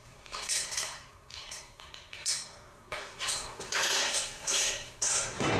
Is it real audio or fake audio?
fake